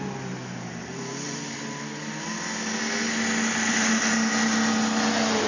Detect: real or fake real